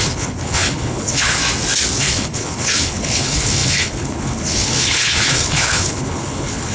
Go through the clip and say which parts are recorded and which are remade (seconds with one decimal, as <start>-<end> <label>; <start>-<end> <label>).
0.0-1.4 remade; 1.4-2.0 recorded; 2.0-6.7 remade